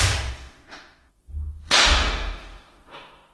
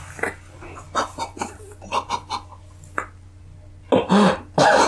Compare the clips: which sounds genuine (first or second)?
second